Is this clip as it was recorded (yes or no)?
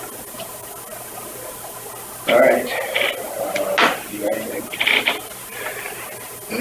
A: yes